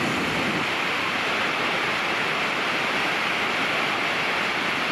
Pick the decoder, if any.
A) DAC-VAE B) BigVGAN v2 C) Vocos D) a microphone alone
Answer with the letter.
D